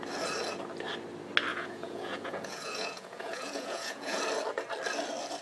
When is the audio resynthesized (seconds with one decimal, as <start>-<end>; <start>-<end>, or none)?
1.5-4.2